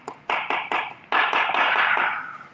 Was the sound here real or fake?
real